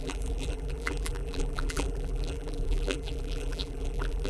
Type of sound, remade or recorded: remade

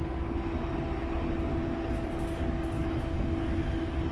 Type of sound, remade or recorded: recorded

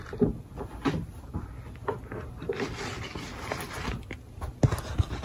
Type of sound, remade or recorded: recorded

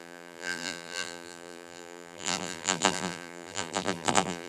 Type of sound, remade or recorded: remade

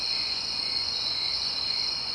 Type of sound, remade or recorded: remade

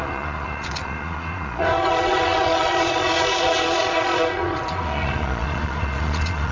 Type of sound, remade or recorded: remade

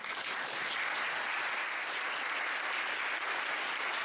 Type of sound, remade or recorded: recorded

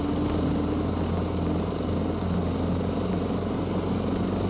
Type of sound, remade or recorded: recorded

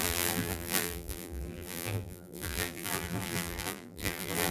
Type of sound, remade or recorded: remade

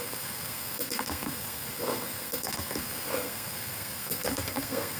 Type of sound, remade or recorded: remade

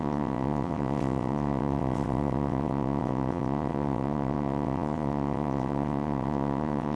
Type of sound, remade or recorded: remade